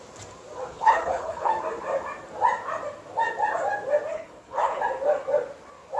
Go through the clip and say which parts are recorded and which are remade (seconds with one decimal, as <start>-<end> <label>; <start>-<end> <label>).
0.0-0.7 recorded; 0.7-1.5 remade; 1.5-4.1 recorded; 4.1-4.8 remade; 4.8-6.0 recorded